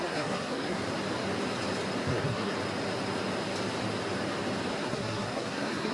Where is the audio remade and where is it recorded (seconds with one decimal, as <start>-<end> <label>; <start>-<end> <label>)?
0.0-0.8 remade; 0.8-2.0 recorded; 2.0-2.5 remade; 2.5-4.7 recorded; 4.7-5.9 remade